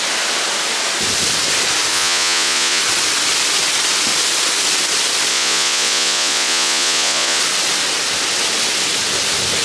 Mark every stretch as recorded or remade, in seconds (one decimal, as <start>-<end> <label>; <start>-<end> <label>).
0.0-1.9 recorded; 1.9-2.8 remade; 2.8-5.3 recorded; 5.3-7.4 remade; 7.4-9.6 recorded